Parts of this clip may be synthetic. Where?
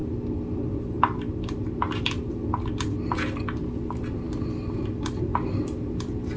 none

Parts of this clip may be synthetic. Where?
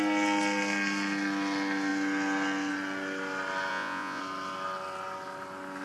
3.7-4.2 (vocoder, Vocos)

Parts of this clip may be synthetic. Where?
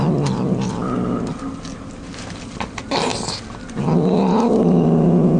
none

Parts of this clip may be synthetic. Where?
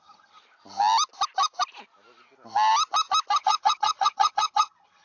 0.0-0.4 (vocoder, HiFi-GAN); 3.4-5.0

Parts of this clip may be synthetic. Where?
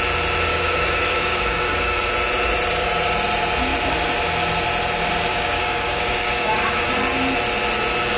0.5-2.1 (codec, DAC); 5.3-6.9